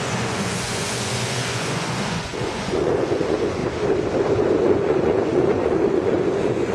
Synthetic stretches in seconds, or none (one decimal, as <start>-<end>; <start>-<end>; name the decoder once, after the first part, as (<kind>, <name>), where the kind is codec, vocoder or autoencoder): 0.0-3.6 (vocoder, Vocos); 4.6-6.7